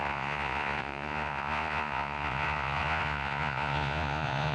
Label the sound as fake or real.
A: fake